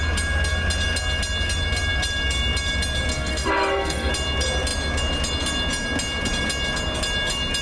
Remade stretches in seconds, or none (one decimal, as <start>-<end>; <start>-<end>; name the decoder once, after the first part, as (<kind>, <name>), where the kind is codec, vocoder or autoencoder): 3.1-4.1 (codec, SNAC)